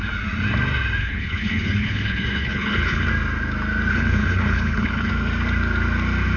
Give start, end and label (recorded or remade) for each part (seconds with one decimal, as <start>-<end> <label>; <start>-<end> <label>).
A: 0.0-1.0 recorded; 1.0-3.1 remade; 3.1-3.9 recorded; 3.9-5.1 remade; 5.1-6.4 recorded